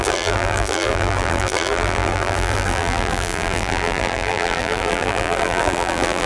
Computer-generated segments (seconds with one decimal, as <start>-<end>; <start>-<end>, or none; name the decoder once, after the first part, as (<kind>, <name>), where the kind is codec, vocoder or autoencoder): 0.0-6.3 (vocoder, BigVGAN v2)

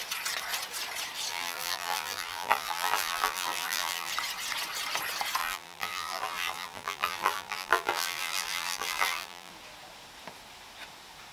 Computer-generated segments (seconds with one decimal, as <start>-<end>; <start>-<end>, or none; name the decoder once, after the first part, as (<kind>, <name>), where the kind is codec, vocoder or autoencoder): 1.3-4.1 (vocoder, BigVGAN v2); 5.4-9.5

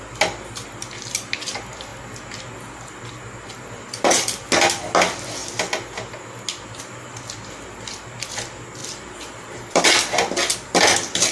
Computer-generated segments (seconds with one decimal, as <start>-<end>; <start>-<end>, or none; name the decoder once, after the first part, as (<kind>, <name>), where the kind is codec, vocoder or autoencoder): 8.8-9.8 (vocoder, BigVGAN v2)

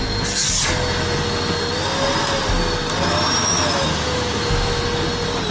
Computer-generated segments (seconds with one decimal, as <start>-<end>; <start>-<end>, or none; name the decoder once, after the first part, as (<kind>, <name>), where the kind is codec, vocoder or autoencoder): 3.4-4.8 (autoencoder, DAC-VAE)